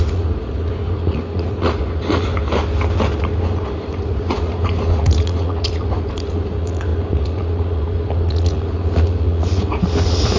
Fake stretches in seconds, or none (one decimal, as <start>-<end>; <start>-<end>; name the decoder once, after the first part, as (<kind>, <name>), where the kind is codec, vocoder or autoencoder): 0.0-2.3 (vocoder, Vocos); 3.2-10.4

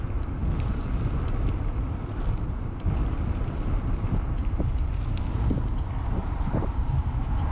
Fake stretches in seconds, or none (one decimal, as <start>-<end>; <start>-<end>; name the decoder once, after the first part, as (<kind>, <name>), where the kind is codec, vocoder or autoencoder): 6.2-6.9 (vocoder, BigVGAN v2)

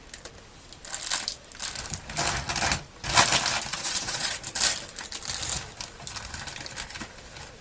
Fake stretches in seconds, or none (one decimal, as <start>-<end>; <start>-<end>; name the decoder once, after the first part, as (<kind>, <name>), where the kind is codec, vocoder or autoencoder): 3.7-4.4 (vocoder, Vocos)

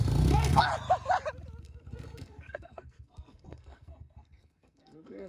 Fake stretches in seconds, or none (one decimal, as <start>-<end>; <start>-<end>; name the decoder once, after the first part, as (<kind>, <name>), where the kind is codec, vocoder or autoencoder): 0.0-0.7 (codec, SNAC); 1.6-5.3

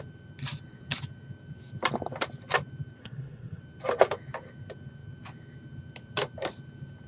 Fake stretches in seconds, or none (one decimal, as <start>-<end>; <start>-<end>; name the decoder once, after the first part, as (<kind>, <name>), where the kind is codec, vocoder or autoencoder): 3.0-3.6 (codec, SNAC)